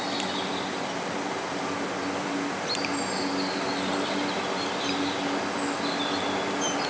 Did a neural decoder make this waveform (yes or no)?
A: no